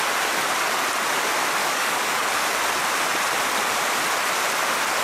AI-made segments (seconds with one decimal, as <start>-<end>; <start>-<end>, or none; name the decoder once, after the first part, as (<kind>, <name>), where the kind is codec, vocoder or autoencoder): 1.6-2.4 (codec, DAC)